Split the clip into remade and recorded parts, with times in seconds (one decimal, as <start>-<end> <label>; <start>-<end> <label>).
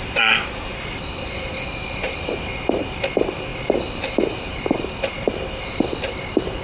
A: 0.0-6.6 recorded